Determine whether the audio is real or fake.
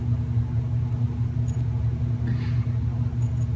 real